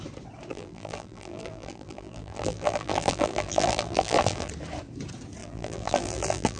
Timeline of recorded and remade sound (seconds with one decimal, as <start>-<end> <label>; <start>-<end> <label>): 0.0-0.5 recorded; 0.5-4.5 remade; 4.5-5.4 recorded; 5.4-6.6 remade